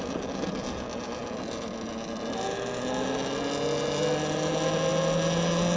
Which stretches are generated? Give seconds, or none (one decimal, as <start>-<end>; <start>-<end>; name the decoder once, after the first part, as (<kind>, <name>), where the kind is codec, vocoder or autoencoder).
none